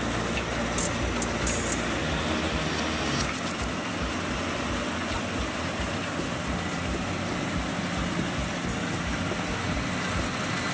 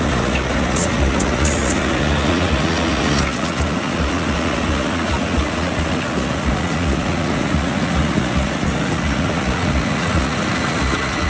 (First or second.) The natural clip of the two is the first